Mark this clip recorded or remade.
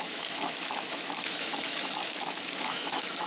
remade